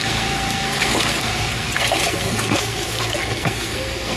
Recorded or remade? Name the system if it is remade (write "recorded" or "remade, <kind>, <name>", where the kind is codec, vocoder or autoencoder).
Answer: remade, codec, SNAC